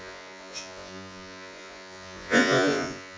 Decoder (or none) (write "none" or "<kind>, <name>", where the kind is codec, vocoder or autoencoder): vocoder, Vocos